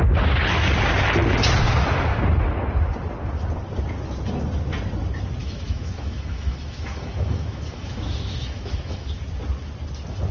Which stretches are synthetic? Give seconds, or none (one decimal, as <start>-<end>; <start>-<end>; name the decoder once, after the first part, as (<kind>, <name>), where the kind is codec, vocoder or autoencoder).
5.4-9.2 (autoencoder, DAC-VAE)